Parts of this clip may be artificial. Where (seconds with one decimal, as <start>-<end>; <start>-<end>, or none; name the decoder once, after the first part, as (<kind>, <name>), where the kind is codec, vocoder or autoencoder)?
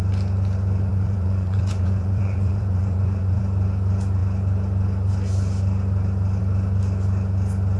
0.9-3.4 (vocoder, Vocos)